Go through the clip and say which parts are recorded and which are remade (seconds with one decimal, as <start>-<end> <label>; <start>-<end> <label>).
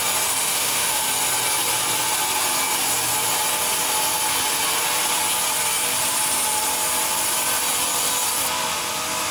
0.0-0.4 recorded; 0.4-1.0 remade; 1.0-9.3 recorded